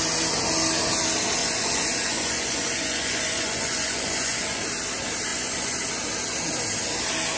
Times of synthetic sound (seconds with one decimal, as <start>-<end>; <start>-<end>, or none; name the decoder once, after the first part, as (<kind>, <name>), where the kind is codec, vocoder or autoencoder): 1.4-4.6 (vocoder, Vocos); 5.3-5.8